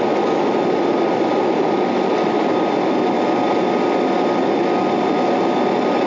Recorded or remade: recorded